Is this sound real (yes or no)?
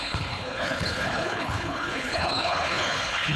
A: no